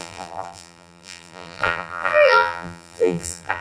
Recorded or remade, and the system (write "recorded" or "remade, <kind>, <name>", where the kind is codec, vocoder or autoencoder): remade, vocoder, BigVGAN v2